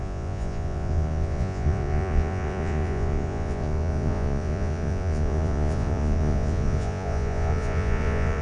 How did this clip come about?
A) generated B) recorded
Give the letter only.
A